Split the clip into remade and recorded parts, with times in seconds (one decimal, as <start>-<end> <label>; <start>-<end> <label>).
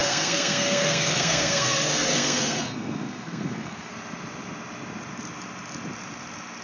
0.0-3.9 remade; 3.9-6.6 recorded